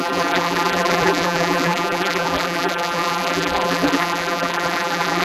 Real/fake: fake